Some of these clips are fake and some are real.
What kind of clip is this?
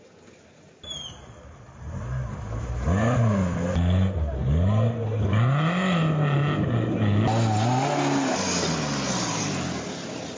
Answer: real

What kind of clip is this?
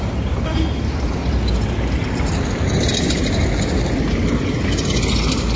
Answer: real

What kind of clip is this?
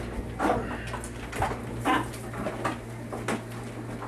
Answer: real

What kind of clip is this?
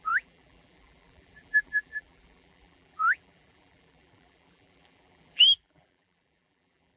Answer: fake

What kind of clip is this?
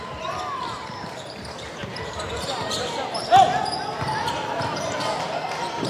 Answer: fake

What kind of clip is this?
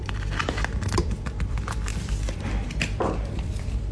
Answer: fake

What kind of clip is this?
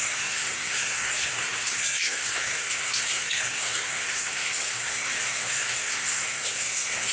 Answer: fake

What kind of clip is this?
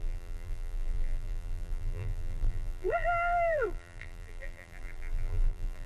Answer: fake